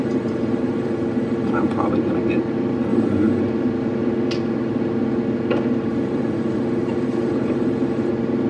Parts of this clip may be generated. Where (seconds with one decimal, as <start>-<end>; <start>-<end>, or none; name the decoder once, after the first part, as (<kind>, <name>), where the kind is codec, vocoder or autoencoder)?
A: 0.0-1.9 (vocoder, BigVGAN v2); 2.9-3.4; 5.9-8.1